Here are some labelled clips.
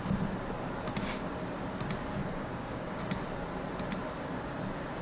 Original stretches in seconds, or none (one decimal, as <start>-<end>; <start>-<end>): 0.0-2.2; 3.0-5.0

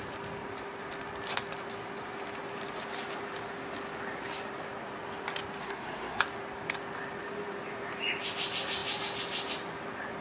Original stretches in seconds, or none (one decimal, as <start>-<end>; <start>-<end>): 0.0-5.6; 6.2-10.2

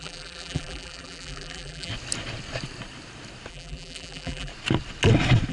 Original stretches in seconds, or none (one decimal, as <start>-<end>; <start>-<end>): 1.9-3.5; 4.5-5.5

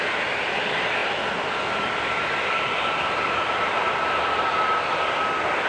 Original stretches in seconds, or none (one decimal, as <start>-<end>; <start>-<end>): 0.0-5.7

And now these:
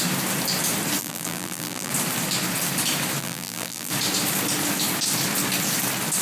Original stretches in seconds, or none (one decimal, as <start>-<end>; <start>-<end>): 0.0-1.0; 1.9-3.2; 3.9-6.2

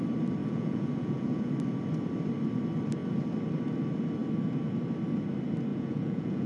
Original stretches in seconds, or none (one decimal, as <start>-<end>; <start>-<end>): 0.0-0.4; 1.5-5.7

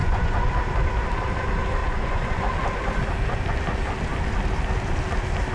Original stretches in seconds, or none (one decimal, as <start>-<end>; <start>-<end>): 0.5-1.8; 2.4-5.5